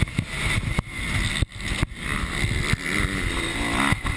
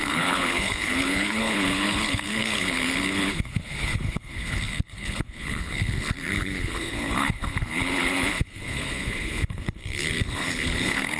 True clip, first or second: first